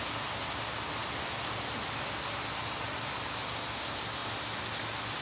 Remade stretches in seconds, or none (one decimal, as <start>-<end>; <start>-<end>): none